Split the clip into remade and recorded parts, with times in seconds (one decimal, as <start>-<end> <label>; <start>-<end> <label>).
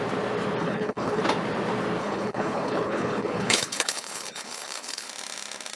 0.0-0.6 recorded; 0.6-1.2 remade; 1.2-2.0 recorded; 2.0-5.1 remade; 5.1-5.8 recorded